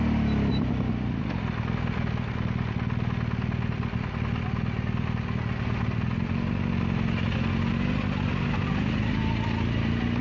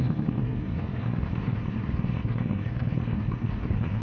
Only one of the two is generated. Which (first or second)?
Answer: second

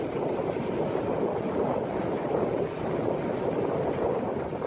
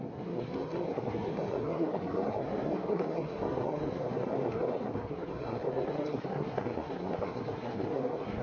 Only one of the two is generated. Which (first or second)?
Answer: second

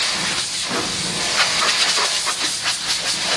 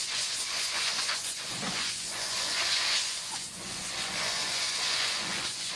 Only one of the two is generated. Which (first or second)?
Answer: second